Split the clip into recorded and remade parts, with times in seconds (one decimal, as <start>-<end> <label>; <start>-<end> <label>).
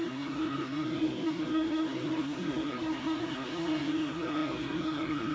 0.0-5.3 remade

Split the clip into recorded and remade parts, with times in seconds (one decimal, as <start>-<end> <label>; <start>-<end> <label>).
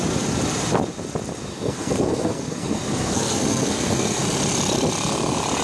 0.0-1.5 recorded; 1.5-4.2 remade; 4.2-5.6 recorded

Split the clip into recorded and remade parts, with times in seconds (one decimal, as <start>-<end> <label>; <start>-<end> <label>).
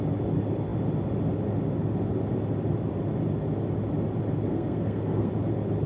0.0-4.5 recorded; 4.5-5.3 remade; 5.3-5.9 recorded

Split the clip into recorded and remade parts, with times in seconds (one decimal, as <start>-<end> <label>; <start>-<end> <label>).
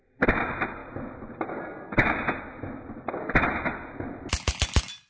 0.0-5.1 recorded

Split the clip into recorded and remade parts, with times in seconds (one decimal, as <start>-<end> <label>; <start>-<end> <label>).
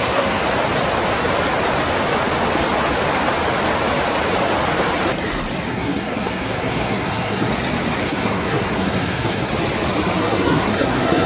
0.0-0.4 remade; 0.4-5.7 recorded; 5.7-7.5 remade; 7.5-8.0 recorded; 8.0-9.5 remade; 9.5-10.2 recorded; 10.2-11.3 remade